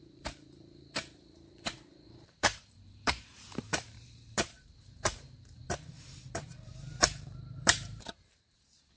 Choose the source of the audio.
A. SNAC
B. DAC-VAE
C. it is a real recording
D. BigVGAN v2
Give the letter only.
D